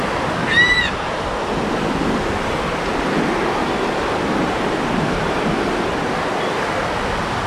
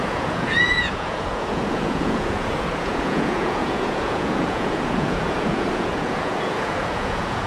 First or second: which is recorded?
first